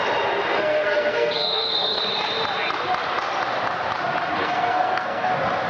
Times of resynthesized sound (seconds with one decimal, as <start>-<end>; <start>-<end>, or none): 0.5-2.0; 4.4-5.3